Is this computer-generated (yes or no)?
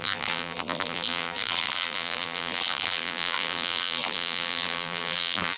yes